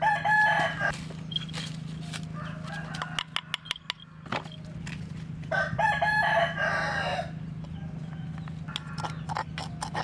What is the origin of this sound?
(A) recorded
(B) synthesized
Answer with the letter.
A